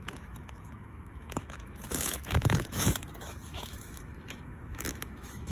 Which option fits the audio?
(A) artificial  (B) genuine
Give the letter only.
A